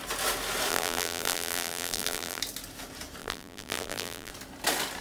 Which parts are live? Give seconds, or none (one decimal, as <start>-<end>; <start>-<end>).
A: 0.0-0.7; 2.4-3.2; 4.3-5.0